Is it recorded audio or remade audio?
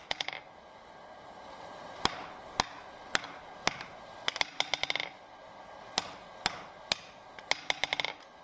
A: recorded